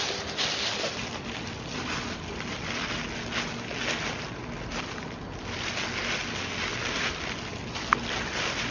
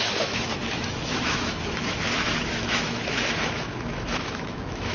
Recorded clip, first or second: first